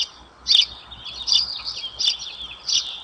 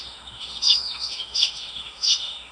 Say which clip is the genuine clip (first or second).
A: first